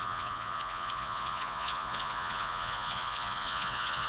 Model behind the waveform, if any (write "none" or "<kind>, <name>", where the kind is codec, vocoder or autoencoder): vocoder, Vocos